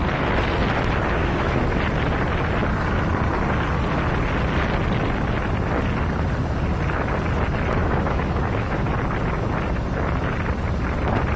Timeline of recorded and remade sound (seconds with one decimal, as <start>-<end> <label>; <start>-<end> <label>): 0.0-1.2 recorded; 1.2-1.8 remade; 1.8-7.8 recorded; 7.8-8.8 remade; 8.8-11.4 recorded